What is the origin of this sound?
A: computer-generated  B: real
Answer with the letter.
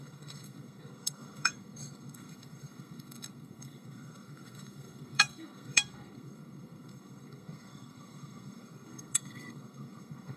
A